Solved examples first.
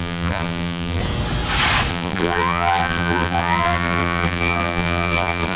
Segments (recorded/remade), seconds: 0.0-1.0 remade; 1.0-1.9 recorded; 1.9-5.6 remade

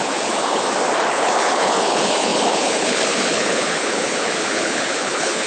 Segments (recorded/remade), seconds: 0.0-0.6 remade; 0.6-1.1 recorded; 1.1-5.5 remade

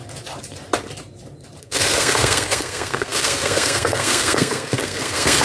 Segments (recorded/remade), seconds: 0.0-1.6 recorded; 1.6-5.4 remade